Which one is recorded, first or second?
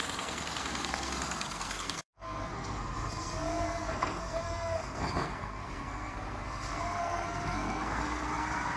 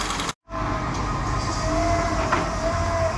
second